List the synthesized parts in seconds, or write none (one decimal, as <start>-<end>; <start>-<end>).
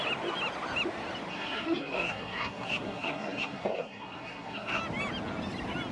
1.3-4.8